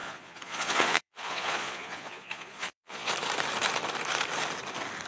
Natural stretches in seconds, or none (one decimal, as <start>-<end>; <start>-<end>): 3.1-5.1